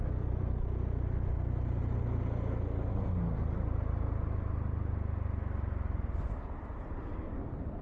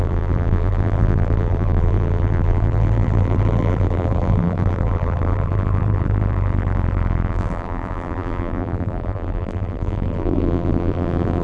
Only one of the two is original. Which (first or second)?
first